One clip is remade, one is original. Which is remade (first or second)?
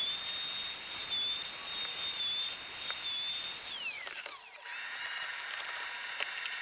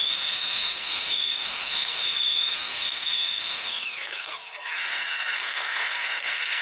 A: second